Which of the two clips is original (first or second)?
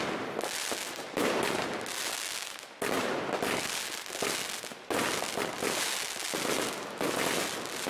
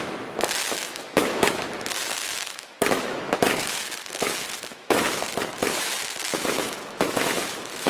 first